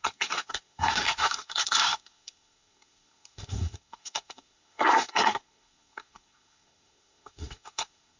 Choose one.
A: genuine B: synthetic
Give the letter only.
B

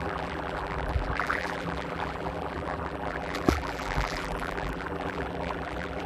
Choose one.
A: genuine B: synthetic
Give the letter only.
B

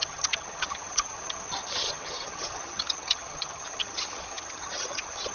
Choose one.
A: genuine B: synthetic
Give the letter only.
B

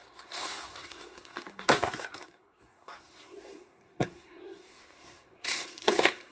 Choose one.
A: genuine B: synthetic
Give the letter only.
B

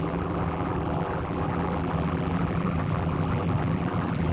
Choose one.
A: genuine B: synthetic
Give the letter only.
B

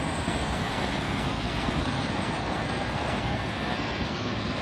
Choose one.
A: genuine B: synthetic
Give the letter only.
B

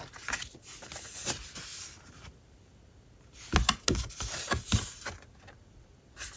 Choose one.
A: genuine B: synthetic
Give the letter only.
A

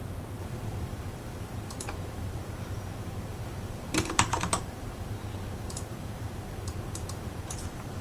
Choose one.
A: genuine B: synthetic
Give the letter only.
B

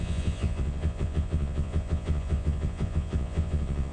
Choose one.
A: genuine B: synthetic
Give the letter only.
B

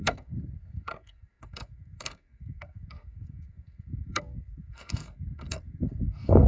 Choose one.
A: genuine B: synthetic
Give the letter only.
B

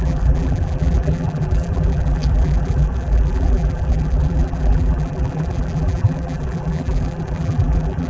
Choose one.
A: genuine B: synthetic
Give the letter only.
B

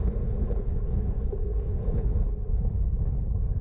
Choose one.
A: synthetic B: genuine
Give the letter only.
A